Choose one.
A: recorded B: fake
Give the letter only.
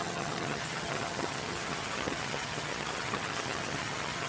B